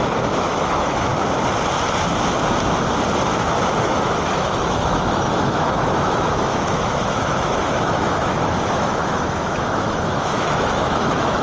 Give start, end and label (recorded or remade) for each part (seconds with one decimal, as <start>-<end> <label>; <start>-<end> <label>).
0.0-1.1 remade; 1.1-3.8 recorded; 3.8-11.4 remade